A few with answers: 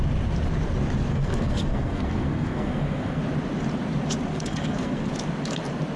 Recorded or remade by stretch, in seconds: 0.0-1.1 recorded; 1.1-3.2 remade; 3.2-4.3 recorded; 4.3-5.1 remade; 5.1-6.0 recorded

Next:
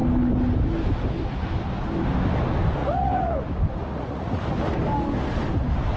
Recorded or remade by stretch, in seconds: 0.0-2.8 recorded; 2.8-3.4 remade; 3.4-3.8 recorded; 3.8-4.4 remade; 4.4-6.0 recorded

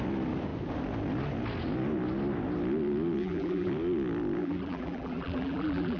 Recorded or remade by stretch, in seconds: 0.0-3.2 recorded; 3.2-3.7 remade; 3.7-4.4 recorded; 4.4-6.0 remade

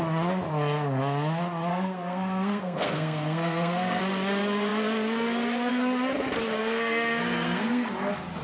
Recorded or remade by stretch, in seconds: 0.0-1.7 recorded; 1.7-4.0 remade; 4.0-6.6 recorded; 6.6-7.9 remade; 7.9-8.4 recorded

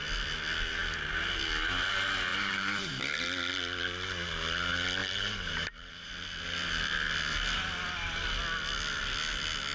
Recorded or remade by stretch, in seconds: 0.0-2.3 recorded; 2.3-3.3 remade; 3.3-5.0 recorded; 5.0-6.1 remade; 6.1-9.7 recorded

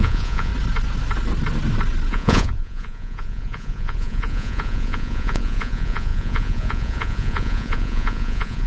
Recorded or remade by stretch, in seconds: 0.0-0.5 remade; 0.5-2.1 recorded; 2.1-8.7 remade